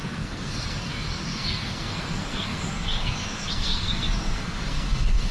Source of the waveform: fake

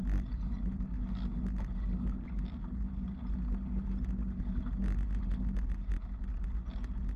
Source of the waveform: real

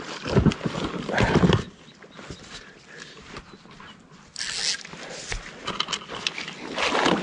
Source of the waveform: real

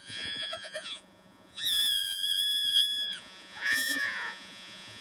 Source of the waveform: fake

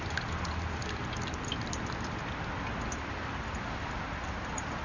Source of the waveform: real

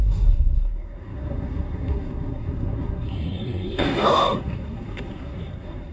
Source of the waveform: fake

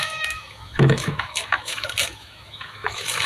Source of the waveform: fake